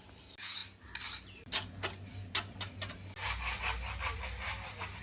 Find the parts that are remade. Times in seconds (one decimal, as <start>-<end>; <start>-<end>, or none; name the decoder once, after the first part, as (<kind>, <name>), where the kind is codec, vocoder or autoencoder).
none

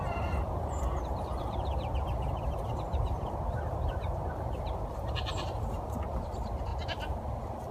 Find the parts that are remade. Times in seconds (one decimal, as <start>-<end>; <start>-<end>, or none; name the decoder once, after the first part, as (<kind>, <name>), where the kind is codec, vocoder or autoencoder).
0.0-6.7 (vocoder, BigVGAN v2)

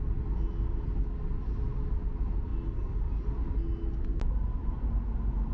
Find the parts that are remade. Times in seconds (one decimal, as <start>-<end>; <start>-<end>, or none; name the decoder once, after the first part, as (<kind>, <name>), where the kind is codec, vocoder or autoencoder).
none

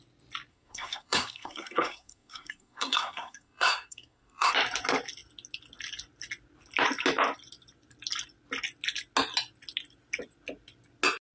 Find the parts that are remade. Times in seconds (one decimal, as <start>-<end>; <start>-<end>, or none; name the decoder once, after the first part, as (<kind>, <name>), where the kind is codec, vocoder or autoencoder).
0.5-4.5 (codec, SNAC)

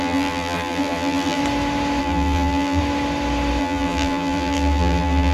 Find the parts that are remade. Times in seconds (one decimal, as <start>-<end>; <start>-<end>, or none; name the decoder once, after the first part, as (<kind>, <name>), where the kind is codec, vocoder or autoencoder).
0.0-1.4 (vocoder, BigVGAN v2); 2.0-2.8; 3.6-5.3

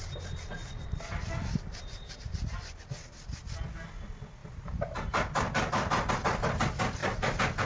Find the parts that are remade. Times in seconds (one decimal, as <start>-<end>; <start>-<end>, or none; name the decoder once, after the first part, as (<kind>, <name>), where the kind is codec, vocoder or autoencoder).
0.6-2.7 (vocoder, BigVGAN v2); 4.4-6.1; 7.0-7.7

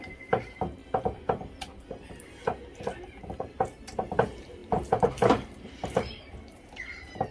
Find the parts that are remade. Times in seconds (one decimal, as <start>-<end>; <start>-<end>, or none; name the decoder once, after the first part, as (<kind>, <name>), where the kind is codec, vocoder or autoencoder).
0.0-0.8 (vocoder, BigVGAN v2); 3.2-7.3

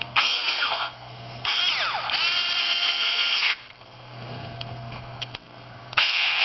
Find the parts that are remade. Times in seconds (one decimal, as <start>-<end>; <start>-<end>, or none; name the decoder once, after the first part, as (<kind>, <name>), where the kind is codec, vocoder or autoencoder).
0.0-1.6 (codec, SNAC); 2.6-6.4